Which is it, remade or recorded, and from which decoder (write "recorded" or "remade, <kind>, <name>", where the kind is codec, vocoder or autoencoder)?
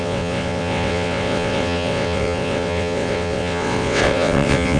remade, vocoder, WaveNeXt